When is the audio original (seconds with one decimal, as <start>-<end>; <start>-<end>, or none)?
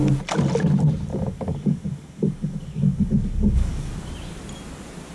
0.0-1.1; 3.9-5.1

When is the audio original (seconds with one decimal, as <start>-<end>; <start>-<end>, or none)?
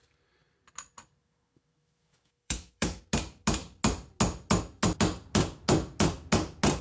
0.0-1.2; 3.0-6.8